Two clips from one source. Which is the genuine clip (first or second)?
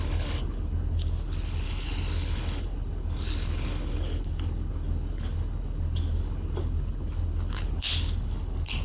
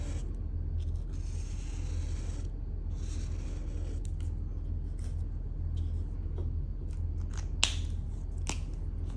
second